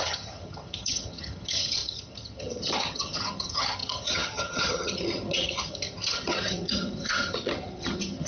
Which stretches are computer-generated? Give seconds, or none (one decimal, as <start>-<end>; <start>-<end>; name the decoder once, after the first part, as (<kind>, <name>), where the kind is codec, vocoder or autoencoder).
0.0-8.3 (vocoder, HiFi-GAN)